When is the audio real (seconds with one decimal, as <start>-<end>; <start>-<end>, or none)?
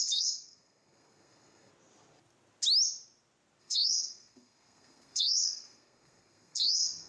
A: 1.7-3.6